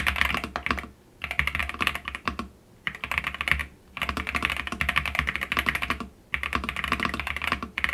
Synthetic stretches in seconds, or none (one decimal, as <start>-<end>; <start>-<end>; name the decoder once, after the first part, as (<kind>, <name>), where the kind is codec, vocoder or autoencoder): none